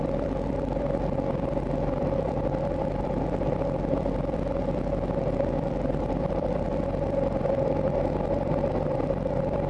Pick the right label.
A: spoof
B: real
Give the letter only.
A